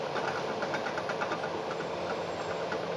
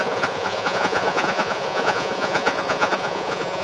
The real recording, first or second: first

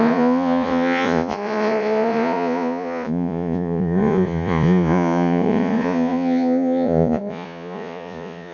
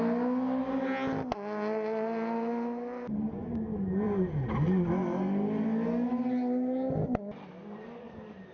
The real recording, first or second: second